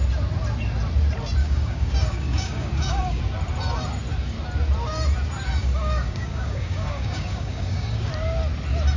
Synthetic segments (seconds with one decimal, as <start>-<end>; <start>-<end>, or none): 1.4-3.2; 5.6-8.1